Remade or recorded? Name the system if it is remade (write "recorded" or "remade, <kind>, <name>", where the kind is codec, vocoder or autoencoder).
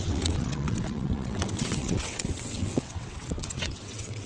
remade, vocoder, WaveNeXt